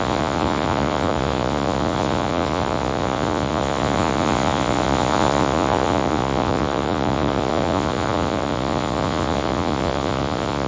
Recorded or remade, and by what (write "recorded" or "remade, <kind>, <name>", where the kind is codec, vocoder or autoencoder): remade, vocoder, Vocos